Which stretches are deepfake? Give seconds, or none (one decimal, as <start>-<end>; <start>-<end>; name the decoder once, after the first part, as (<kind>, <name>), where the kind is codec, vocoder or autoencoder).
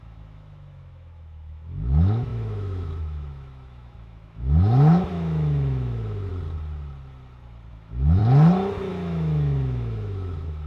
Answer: 0.0-6.3 (autoencoder, DAC-VAE); 7.7-8.2; 8.9-10.7